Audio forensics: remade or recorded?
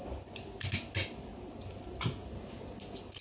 recorded